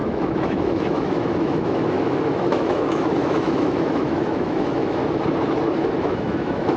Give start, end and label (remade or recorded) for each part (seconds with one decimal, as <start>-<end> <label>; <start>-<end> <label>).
0.0-5.0 remade; 5.0-6.0 recorded; 6.0-6.8 remade